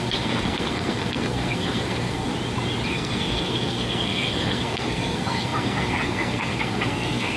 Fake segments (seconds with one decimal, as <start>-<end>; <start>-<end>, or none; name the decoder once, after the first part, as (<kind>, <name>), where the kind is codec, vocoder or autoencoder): 0.0-2.3 (codec, SNAC); 2.9-7.4